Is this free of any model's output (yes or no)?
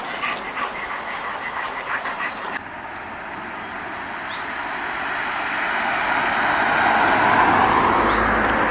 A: yes